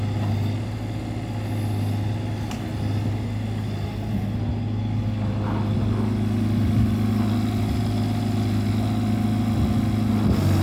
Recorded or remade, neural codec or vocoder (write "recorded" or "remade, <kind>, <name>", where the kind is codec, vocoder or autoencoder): recorded